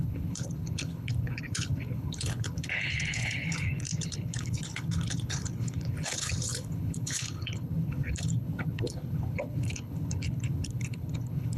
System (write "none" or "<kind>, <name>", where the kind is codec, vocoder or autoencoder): codec, HILCodec